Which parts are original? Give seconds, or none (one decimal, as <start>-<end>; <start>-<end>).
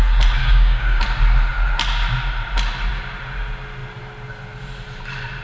0.0-0.4; 1.0-5.4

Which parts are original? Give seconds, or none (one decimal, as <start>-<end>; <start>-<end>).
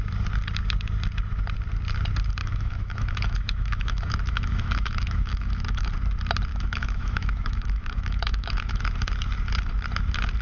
0.0-2.4; 5.9-6.5; 8.8-10.4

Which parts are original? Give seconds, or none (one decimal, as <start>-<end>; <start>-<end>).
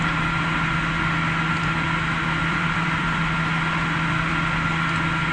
0.0-2.4; 3.3-5.3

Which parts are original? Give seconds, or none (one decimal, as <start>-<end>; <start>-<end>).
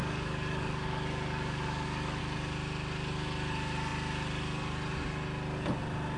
2.2-6.2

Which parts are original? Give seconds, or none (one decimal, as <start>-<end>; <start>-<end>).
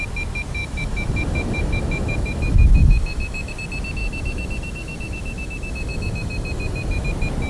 0.0-0.6; 3.5-4.0; 7.0-7.5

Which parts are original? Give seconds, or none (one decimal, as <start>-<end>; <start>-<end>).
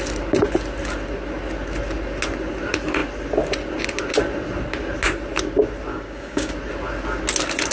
0.0-5.9; 6.5-7.7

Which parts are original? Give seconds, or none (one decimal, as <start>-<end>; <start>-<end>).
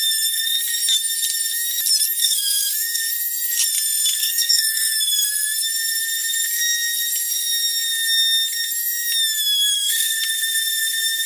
0.0-2.2; 3.0-4.2; 5.0-9.7; 10.2-11.3